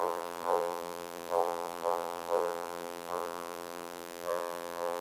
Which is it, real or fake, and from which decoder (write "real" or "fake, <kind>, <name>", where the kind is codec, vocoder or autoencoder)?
fake, vocoder, BigVGAN v2